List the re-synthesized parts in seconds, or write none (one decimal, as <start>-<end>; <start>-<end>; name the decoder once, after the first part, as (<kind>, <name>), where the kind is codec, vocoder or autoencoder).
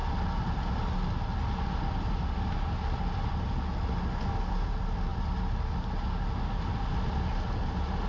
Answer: none